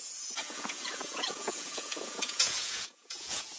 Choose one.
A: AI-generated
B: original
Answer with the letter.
A